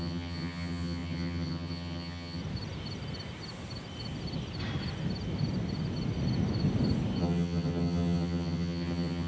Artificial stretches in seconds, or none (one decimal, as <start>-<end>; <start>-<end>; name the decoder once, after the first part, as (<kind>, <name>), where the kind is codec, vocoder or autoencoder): 0.0-2.4 (vocoder, HiFi-GAN); 7.2-9.3